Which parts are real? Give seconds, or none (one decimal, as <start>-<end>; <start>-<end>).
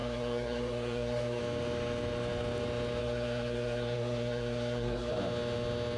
1.4-3.0; 5.1-6.0